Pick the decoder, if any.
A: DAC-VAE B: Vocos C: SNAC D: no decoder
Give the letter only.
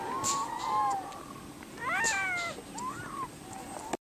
D